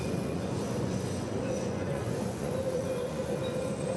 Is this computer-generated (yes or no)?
yes